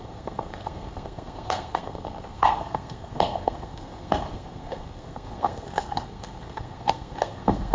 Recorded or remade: remade